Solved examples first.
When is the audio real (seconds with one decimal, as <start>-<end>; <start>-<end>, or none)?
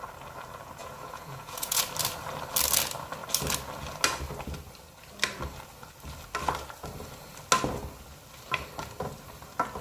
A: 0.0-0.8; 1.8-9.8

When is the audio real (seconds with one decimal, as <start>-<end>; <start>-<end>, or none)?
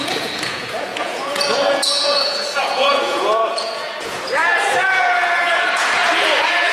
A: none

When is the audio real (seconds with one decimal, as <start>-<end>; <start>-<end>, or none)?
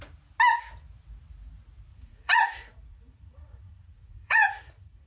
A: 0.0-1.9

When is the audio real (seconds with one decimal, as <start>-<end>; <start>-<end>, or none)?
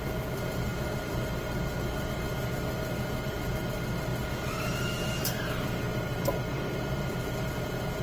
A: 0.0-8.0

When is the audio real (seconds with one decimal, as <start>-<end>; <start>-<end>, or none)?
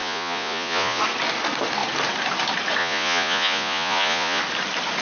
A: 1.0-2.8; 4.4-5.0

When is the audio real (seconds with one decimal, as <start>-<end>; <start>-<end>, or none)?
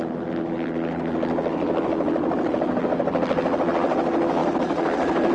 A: 0.0-5.3